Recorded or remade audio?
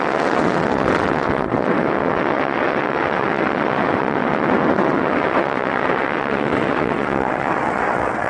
remade